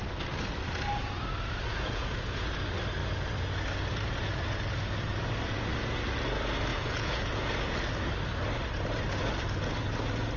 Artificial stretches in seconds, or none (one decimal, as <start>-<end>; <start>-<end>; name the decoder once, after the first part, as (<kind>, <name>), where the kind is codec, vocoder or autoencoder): 1.7-2.5 (vocoder, Vocos); 6.7-7.5